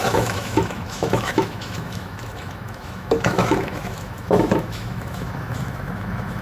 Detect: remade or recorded remade